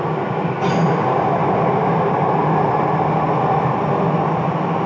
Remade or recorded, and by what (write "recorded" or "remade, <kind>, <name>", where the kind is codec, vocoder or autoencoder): recorded